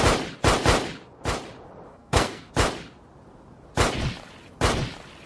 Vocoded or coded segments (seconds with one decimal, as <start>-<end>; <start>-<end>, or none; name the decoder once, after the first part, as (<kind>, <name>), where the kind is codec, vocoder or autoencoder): 1.9-2.5 (codec, SNAC)